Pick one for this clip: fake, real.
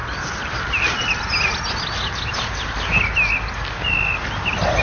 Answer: real